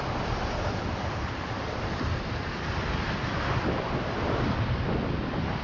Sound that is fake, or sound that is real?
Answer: real